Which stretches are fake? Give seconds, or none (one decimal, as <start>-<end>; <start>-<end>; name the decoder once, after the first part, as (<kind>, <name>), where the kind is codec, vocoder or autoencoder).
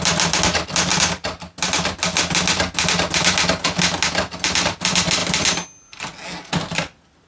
none